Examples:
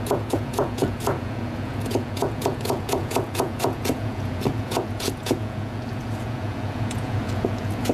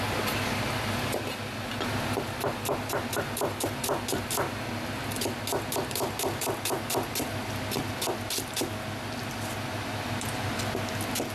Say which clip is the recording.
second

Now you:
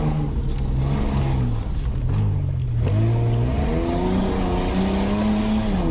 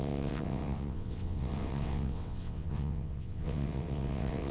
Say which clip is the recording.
first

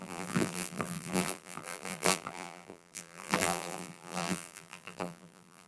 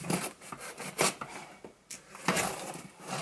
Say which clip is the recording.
second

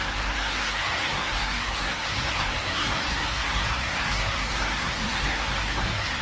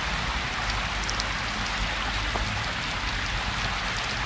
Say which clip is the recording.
second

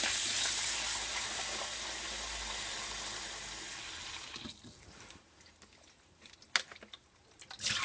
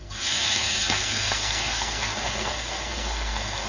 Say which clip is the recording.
first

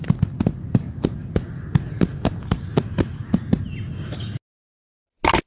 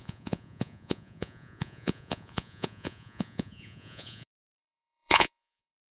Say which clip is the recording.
first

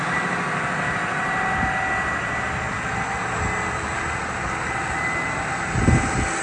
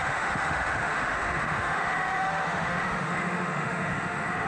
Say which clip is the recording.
first